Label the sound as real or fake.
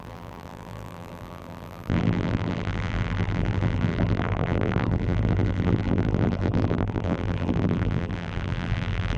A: fake